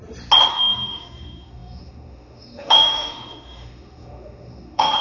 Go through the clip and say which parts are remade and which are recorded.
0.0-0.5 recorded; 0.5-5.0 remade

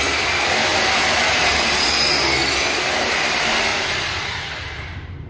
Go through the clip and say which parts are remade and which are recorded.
0.0-0.7 recorded; 0.7-2.2 remade; 2.2-3.7 recorded; 3.7-5.3 remade

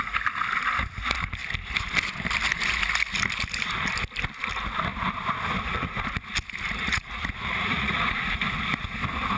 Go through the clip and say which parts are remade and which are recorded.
0.0-6.8 recorded; 6.8-8.1 remade; 8.1-9.4 recorded

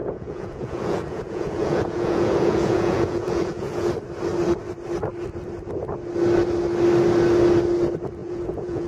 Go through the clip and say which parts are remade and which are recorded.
0.0-3.9 remade; 3.9-8.2 recorded; 8.2-8.9 remade

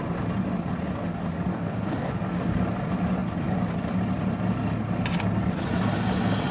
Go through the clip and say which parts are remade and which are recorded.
0.0-1.5 recorded; 1.5-2.1 remade; 2.1-6.5 recorded

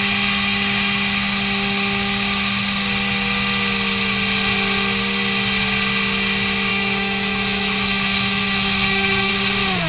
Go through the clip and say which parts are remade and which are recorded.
0.0-6.7 recorded; 6.7-9.3 remade; 9.3-9.9 recorded